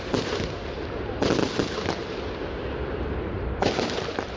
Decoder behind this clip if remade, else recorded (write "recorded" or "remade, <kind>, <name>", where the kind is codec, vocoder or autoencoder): recorded